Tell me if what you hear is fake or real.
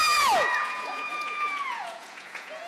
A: fake